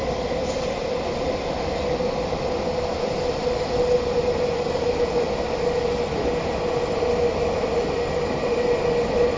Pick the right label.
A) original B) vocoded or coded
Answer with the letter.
A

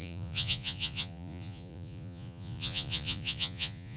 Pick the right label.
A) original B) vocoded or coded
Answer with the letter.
B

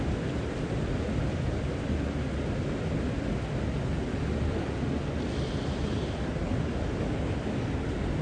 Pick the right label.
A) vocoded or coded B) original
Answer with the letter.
B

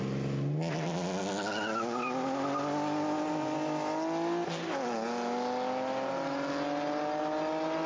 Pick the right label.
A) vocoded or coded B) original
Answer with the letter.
B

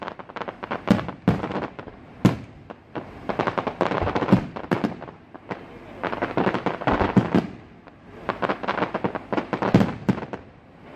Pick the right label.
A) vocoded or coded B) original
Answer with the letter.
B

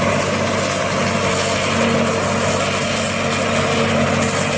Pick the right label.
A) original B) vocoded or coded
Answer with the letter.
A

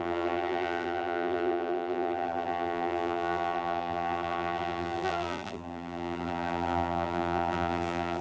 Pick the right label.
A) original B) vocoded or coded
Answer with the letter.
B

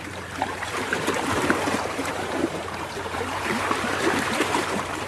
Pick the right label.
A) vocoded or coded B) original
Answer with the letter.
A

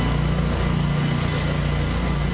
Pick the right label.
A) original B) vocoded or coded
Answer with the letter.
A